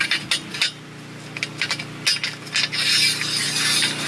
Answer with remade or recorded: recorded